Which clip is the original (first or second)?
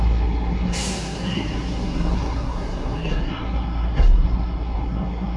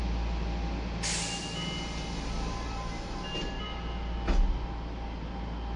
second